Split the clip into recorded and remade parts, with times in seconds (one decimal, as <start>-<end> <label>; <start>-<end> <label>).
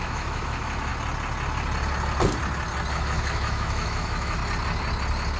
0.0-0.9 remade; 0.9-2.9 recorded; 2.9-4.4 remade; 4.4-5.4 recorded